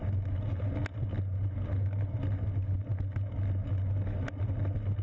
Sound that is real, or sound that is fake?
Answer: real